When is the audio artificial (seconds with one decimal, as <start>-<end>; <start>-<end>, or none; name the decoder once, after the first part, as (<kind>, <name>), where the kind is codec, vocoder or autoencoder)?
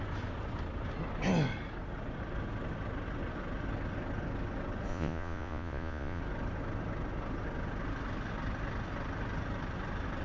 4.9-6.2 (vocoder, Vocos)